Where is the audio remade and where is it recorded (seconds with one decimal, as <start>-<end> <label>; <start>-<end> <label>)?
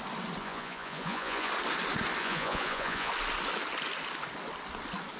0.0-0.4 recorded; 0.4-1.5 remade; 1.5-2.2 recorded; 2.2-3.1 remade; 3.1-5.2 recorded